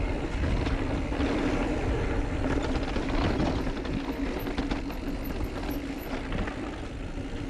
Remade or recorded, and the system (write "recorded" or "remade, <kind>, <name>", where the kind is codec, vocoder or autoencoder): recorded